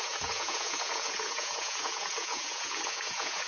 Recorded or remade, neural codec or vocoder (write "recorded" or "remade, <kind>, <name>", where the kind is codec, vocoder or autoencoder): remade, vocoder, Vocos